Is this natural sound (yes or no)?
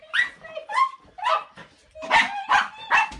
yes